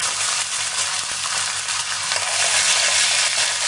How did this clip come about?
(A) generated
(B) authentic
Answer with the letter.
B